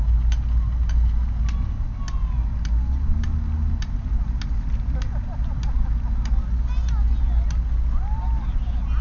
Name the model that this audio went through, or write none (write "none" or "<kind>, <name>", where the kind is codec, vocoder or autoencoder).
none